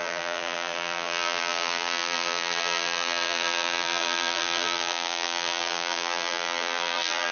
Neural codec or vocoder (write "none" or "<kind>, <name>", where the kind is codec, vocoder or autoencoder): vocoder, BigVGAN v2